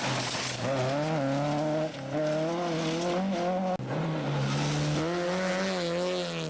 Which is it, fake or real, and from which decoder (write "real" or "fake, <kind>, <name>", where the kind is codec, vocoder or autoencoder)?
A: real